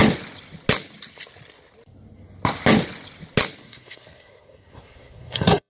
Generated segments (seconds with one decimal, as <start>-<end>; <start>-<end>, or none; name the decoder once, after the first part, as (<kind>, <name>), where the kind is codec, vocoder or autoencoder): 3.6-5.7 (codec, SNAC)